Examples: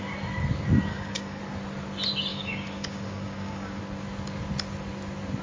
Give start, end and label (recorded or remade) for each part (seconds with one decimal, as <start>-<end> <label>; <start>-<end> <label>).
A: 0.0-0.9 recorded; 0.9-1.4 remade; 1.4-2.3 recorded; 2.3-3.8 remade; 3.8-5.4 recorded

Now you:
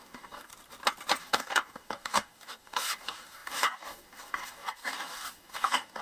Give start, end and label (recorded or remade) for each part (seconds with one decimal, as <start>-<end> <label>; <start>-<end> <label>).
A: 0.0-0.5 remade; 0.5-1.2 recorded; 1.2-6.0 remade

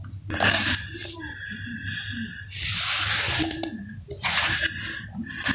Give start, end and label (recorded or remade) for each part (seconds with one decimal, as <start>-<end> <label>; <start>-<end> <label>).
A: 0.0-5.5 recorded

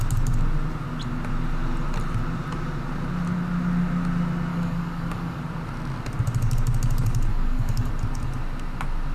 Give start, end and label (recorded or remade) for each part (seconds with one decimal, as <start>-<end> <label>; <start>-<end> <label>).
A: 0.0-4.5 recorded; 4.5-5.4 remade; 5.4-7.3 recorded; 7.3-7.9 remade; 7.9-9.1 recorded

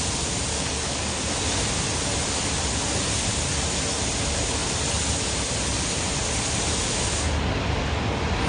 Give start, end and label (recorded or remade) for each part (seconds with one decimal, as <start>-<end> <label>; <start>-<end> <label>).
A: 0.0-0.5 recorded; 0.5-1.1 remade; 1.1-8.5 recorded